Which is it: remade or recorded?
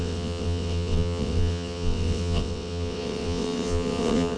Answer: remade